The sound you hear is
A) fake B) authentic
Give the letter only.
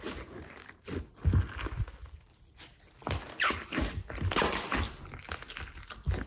B